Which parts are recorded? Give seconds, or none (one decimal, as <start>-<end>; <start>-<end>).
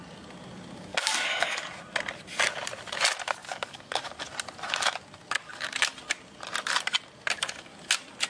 0.0-0.9; 1.6-3.4; 4.1-5.4; 5.9-8.3